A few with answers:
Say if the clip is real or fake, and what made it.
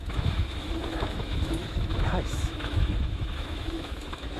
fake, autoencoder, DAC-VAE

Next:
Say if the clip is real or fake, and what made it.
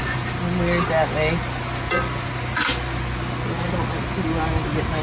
real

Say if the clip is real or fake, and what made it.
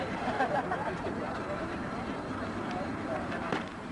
fake, vocoder, BigVGAN v2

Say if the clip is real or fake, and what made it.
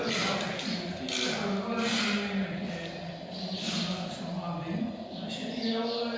real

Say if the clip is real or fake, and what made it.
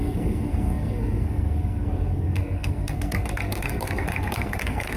fake, codec, SNAC